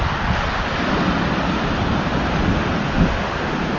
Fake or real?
real